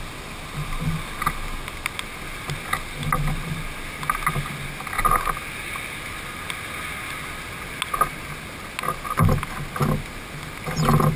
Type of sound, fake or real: real